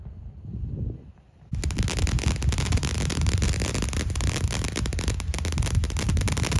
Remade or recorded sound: recorded